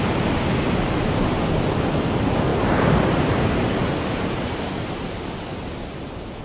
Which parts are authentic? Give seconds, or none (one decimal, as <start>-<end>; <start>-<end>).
0.0-2.5